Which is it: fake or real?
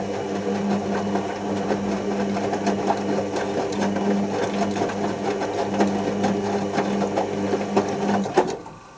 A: real